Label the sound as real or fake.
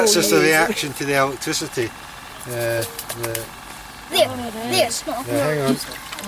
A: real